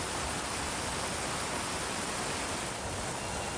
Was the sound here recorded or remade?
remade